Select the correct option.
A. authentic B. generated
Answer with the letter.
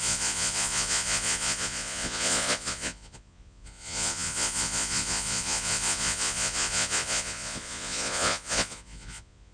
B